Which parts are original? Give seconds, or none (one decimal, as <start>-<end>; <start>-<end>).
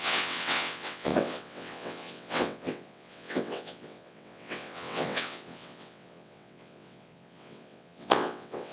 none